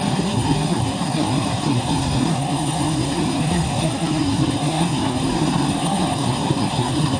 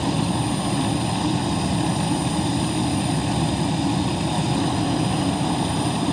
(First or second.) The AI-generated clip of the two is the first